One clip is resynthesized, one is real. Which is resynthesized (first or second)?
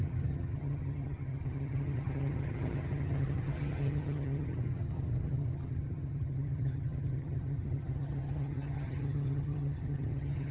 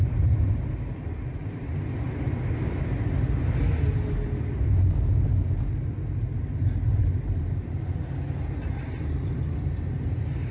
first